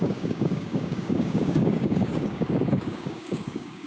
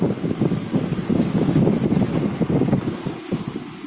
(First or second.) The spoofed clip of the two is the first